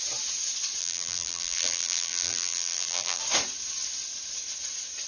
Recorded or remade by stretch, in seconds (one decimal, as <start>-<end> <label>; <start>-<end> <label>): 0.0-0.8 recorded; 0.8-3.2 remade; 3.2-5.1 recorded